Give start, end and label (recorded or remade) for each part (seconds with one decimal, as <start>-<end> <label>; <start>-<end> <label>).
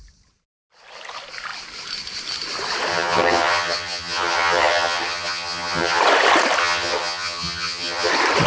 0.0-2.9 recorded; 2.9-6.0 remade; 6.0-6.6 recorded; 6.6-8.1 remade; 8.1-8.5 recorded